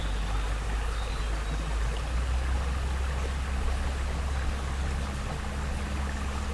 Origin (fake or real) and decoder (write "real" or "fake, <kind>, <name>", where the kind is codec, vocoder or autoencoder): real